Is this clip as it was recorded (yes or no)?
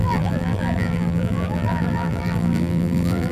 no